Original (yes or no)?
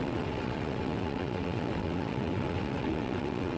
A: no